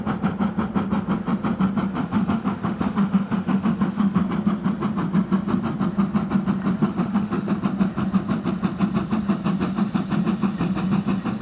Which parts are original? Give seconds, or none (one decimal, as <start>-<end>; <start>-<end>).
0.0-2.0; 4.2-6.8; 7.5-11.4